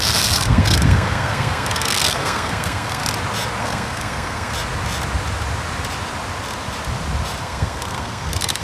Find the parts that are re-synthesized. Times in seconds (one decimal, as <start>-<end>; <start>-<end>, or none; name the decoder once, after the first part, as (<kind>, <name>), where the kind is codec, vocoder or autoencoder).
0.0-3.0 (codec, SNAC); 3.6-4.5; 7.4-8.6